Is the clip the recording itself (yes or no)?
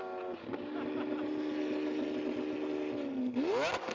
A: yes